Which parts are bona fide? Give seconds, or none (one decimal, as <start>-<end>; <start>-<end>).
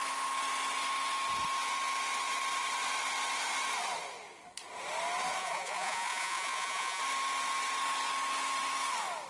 0.0-5.4; 7.0-9.3